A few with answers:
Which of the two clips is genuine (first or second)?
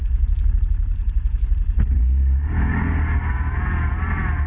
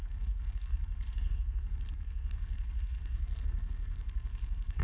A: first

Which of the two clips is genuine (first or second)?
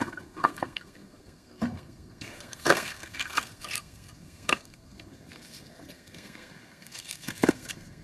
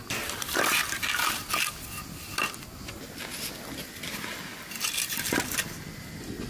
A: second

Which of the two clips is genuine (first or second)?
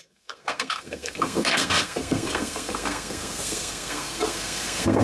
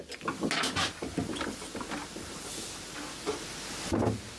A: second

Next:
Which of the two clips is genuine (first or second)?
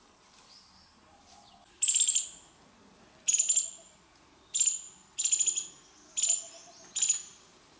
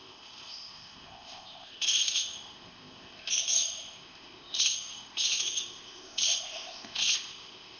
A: first